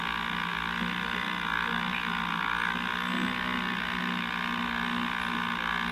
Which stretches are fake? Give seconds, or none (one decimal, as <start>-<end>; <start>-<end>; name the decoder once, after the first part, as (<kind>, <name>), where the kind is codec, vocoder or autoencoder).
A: none